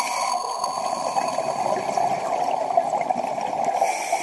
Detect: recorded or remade recorded